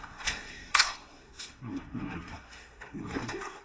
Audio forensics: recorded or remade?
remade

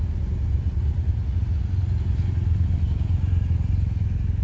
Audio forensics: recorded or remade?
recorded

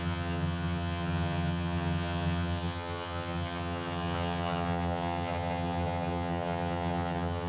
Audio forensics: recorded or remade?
remade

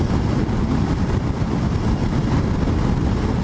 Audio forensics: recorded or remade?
recorded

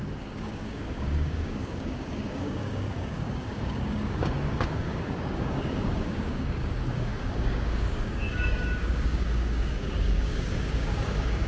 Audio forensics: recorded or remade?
remade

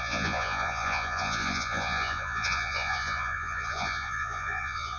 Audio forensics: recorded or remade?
remade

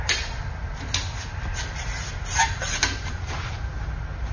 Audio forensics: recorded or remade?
recorded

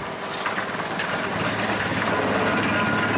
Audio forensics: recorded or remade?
recorded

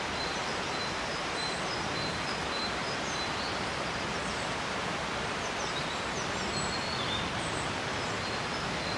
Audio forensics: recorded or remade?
recorded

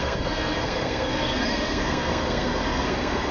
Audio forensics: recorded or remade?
remade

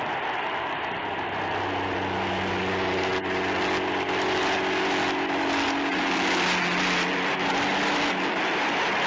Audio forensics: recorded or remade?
recorded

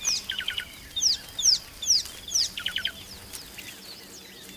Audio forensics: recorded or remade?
recorded